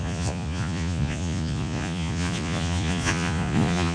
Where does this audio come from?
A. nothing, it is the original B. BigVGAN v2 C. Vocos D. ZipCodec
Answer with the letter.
C